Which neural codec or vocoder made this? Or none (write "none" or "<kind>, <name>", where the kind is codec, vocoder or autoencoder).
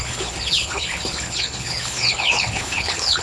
codec, HILCodec